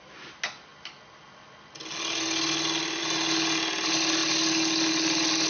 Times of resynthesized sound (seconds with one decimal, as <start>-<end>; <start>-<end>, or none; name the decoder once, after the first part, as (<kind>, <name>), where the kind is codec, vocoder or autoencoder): none